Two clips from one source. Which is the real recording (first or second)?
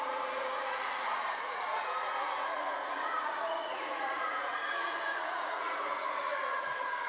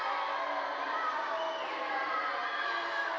second